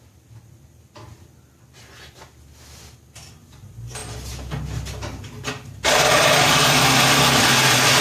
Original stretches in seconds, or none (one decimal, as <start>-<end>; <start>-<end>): 0.0-8.0